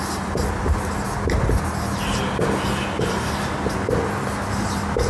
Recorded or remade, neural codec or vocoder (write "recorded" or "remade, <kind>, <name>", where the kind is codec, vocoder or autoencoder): recorded